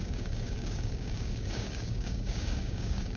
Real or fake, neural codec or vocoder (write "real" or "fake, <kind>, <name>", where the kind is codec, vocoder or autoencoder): fake, codec, DAC